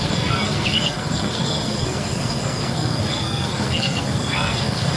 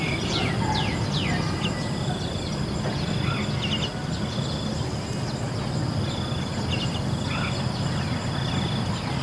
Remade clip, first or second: first